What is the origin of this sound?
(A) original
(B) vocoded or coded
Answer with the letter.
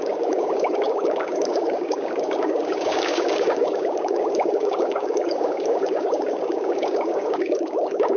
B